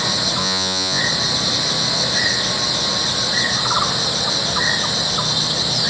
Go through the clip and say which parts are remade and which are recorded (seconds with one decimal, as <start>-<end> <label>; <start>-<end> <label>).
0.0-0.4 recorded; 0.4-1.0 remade; 1.0-5.9 recorded